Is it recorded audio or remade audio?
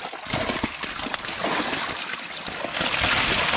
recorded